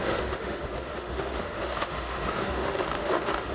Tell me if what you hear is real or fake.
fake